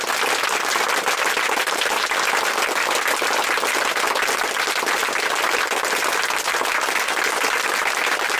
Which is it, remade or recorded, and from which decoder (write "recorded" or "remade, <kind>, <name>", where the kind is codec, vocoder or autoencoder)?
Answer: recorded